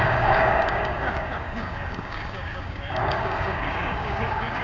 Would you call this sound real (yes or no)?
no